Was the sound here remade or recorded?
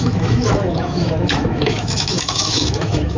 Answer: remade